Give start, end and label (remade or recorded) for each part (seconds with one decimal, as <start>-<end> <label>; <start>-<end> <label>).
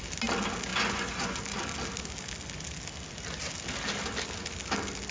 0.0-0.7 recorded; 0.7-1.4 remade; 1.4-5.1 recorded